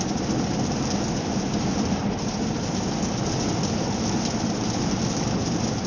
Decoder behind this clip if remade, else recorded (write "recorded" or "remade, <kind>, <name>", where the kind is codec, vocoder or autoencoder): recorded